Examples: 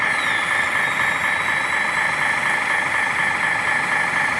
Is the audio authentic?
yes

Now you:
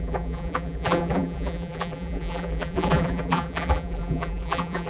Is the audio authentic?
no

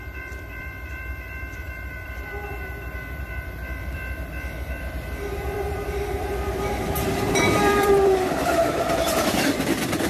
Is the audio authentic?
no